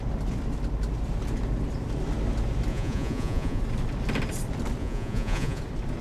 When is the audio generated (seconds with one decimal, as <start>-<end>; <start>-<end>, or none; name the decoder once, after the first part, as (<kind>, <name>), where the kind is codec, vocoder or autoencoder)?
2.7-3.6 (vocoder, Vocos); 4.8-5.6